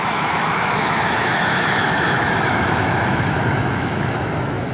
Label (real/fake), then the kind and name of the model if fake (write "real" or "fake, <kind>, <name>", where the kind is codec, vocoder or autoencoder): fake, autoencoder, DAC-VAE